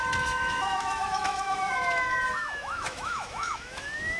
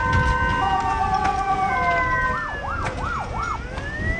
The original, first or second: second